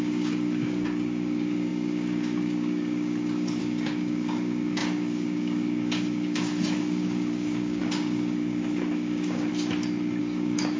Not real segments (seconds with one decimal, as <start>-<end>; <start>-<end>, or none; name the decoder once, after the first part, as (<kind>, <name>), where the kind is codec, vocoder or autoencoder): 0.0-9.5 (codec, DAC); 10.2-10.8